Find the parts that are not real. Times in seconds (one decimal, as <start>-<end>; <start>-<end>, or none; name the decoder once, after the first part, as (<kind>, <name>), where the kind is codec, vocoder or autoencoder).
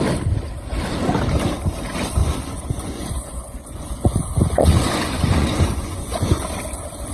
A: 2.2-6.5 (vocoder, Vocos)